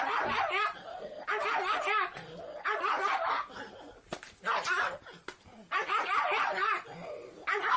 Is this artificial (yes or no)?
no